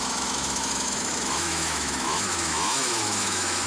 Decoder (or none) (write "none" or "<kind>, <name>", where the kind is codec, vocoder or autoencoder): autoencoder, DAC-VAE